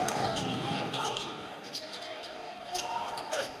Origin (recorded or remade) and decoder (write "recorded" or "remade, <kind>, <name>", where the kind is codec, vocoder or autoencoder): remade, codec, DAC